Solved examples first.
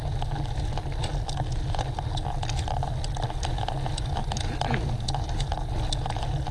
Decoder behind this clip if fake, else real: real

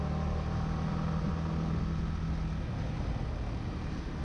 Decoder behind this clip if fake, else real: real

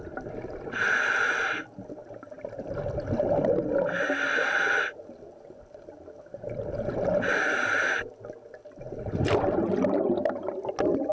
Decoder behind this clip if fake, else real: real